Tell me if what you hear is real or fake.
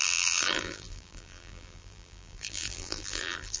fake